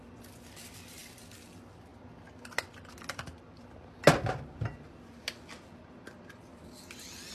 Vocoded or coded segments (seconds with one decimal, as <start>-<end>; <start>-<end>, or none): none